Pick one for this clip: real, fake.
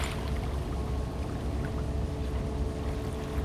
real